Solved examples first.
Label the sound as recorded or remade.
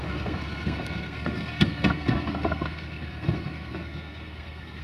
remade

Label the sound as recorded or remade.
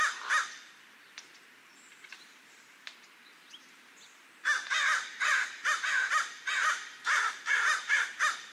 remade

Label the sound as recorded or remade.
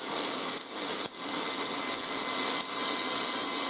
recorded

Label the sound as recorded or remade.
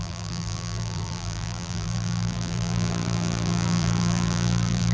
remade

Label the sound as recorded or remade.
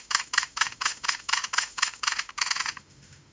remade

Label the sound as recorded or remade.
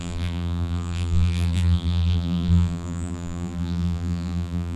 remade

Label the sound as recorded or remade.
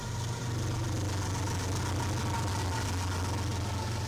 recorded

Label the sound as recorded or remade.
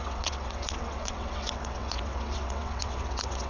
remade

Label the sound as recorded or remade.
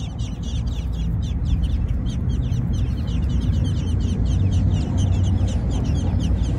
recorded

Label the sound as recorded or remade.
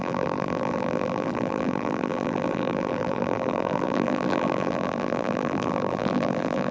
remade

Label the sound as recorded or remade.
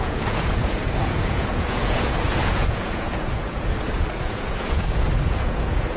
remade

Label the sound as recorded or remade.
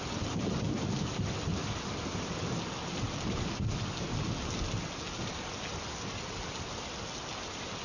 recorded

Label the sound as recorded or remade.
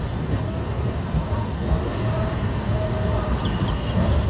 recorded